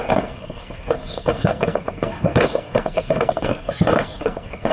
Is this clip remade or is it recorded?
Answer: remade